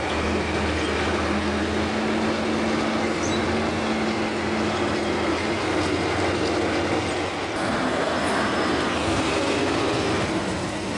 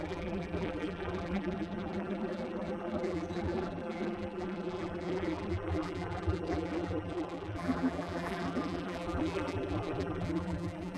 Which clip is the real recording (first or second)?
first